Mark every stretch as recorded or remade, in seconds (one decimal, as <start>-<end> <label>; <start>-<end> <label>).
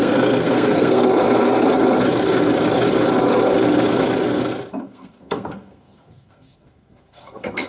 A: 0.0-1.0 remade; 1.0-4.8 recorded; 4.8-7.7 remade